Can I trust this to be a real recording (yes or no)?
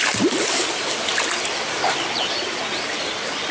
yes